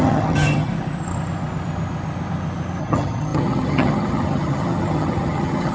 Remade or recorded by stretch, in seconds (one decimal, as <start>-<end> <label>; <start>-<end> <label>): 0.0-0.7 remade; 0.7-2.8 recorded; 2.8-5.7 remade